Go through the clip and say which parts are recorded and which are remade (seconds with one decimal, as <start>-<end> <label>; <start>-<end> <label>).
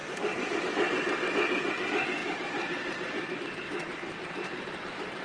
0.0-2.2 recorded; 2.2-3.4 remade; 3.4-4.2 recorded; 4.2-5.2 remade